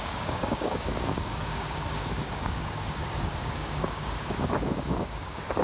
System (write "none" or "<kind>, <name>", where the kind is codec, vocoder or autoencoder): codec, DAC